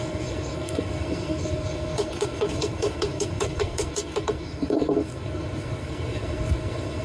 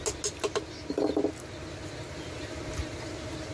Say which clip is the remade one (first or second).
first